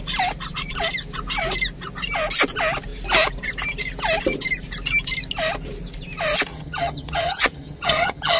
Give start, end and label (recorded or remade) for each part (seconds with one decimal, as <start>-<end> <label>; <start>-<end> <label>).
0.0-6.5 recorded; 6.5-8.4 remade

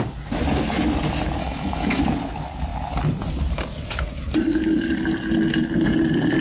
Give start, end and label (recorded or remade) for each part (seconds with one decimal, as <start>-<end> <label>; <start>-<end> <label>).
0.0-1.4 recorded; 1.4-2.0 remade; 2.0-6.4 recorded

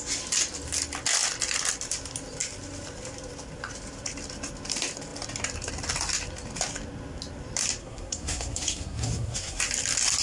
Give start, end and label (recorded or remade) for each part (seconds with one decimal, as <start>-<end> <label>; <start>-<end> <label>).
0.0-7.8 recorded; 7.8-9.6 remade; 9.6-10.2 recorded

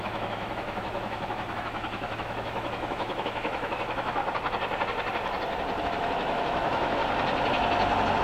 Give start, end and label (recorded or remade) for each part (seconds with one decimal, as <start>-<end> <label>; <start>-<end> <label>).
0.0-4.2 remade; 4.2-5.8 recorded; 5.8-7.0 remade; 7.0-8.2 recorded

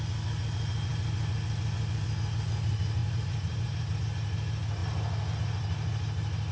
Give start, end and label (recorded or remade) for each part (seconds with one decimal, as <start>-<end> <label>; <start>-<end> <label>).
0.0-3.0 recorded; 3.0-4.0 remade; 4.0-6.5 recorded

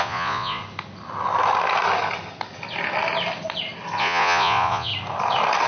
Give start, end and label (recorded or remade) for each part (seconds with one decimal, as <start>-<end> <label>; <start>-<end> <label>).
0.0-0.6 remade; 0.6-4.0 recorded; 4.0-4.9 remade; 4.9-5.7 recorded

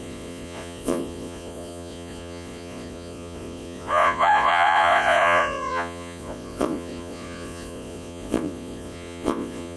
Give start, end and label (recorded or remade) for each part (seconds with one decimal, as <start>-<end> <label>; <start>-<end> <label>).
0.0-9.8 remade

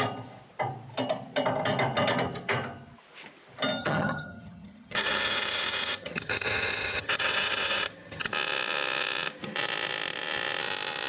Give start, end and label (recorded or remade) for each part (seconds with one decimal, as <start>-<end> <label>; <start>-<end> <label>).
0.0-3.8 recorded; 3.8-8.3 remade; 8.3-11.1 recorded